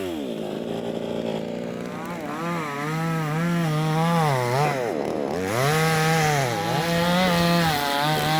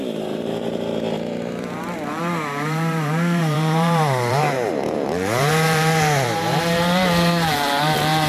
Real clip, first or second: first